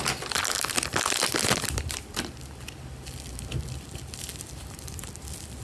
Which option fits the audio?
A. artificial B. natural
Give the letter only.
A